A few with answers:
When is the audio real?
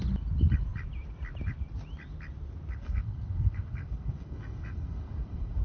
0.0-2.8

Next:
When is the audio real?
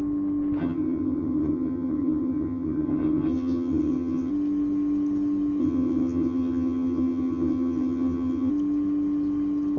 0.0-0.6; 4.3-5.6; 8.5-9.8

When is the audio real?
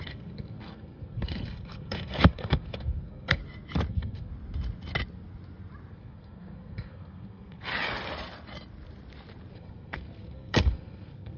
3.4-3.9; 4.3-5.9; 7.7-9.5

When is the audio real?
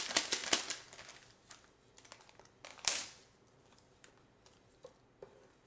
0.0-2.7; 4.1-5.7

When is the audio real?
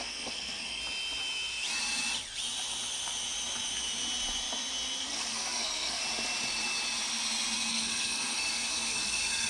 0.8-5.0; 6.0-7.7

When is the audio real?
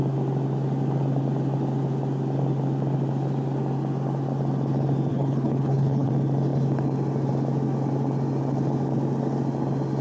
0.0-5.1; 6.1-10.0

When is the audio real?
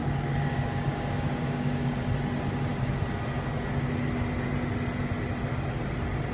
2.0-6.3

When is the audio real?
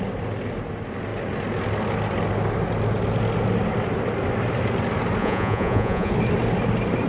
0.0-5.2; 6.1-7.1